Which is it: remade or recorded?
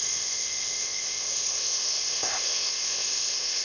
remade